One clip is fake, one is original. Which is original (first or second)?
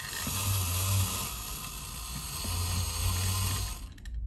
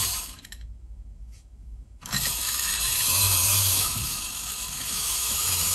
first